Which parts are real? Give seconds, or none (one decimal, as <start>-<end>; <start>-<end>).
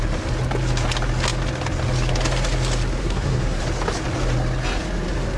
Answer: 0.0-3.0; 3.6-5.4